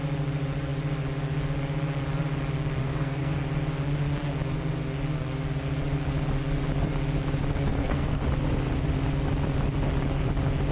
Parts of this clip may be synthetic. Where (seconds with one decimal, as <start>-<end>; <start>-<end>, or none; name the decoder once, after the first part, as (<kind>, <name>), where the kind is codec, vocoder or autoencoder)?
2.8-3.3 (codec, SNAC); 7.7-8.2